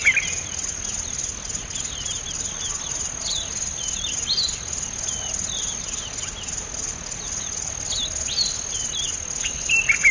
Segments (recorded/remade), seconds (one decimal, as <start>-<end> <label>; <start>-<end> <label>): 0.0-10.1 recorded